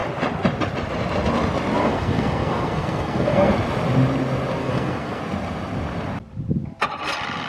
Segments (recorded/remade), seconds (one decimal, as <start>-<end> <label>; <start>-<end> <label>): 0.0-1.8 recorded; 1.8-3.5 remade; 3.5-4.6 recorded; 4.6-5.2 remade; 5.2-7.5 recorded